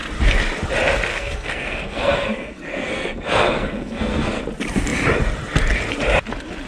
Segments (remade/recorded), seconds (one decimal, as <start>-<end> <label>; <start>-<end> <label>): 0.0-1.1 recorded; 1.1-4.4 remade; 4.4-6.7 recorded